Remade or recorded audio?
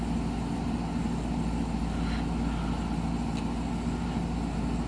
recorded